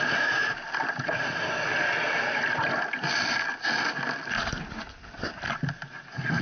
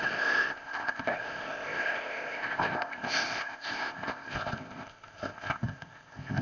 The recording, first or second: first